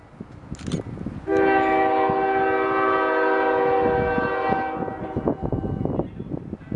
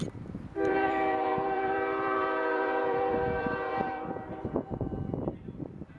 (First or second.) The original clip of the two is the first